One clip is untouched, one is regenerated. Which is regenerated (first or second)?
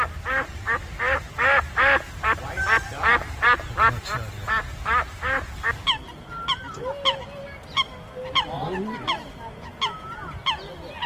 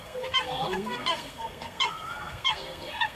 second